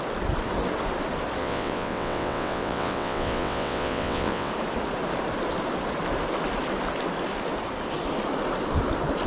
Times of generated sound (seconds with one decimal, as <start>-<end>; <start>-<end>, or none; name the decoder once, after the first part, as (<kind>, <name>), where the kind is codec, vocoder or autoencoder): 1.4-4.5 (vocoder, WaveNeXt)

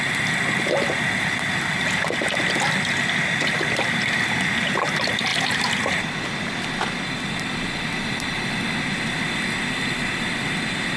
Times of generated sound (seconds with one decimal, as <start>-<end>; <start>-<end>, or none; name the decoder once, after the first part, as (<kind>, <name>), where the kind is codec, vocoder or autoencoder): none

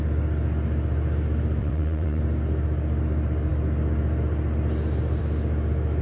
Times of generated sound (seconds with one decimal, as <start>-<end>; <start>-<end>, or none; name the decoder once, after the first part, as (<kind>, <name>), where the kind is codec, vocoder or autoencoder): 1.6-2.2 (vocoder, WaveNeXt)

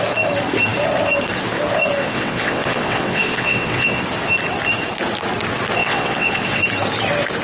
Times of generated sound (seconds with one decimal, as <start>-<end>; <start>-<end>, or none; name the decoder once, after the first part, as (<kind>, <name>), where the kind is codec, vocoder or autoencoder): 2.0-4.0 (vocoder, WaveNeXt); 5.8-6.6

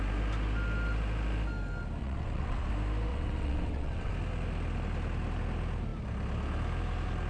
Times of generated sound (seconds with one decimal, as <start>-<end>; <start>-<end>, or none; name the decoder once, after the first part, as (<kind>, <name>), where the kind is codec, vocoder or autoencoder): 2.0-2.7 (vocoder, WaveNeXt); 3.1-4.1

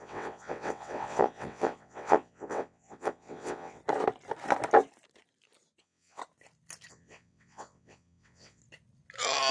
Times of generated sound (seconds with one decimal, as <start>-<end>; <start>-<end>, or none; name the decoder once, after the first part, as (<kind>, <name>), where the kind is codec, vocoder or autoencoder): 0.0-3.8 (vocoder, WaveNeXt); 5.8-6.2; 6.9-8.6

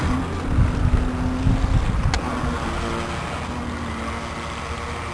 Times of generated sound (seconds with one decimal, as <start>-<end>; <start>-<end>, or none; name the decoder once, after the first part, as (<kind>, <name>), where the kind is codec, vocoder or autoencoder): none

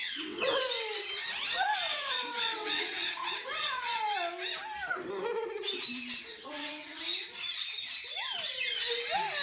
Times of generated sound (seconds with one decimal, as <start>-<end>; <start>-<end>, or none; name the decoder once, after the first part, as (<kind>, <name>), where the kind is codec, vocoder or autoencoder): 0.0-0.6 (vocoder, WaveNeXt); 1.9-4.0; 6.3-7.0